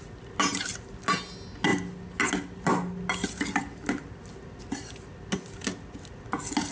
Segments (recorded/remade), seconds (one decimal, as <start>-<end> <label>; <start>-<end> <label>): 0.0-6.7 recorded